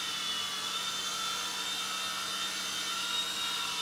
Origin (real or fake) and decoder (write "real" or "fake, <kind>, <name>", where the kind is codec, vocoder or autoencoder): real